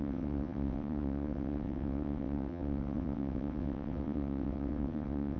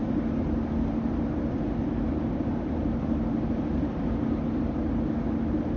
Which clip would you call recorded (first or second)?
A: second